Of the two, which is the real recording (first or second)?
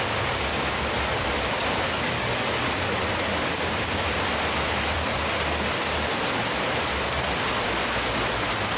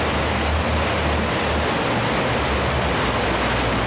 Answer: second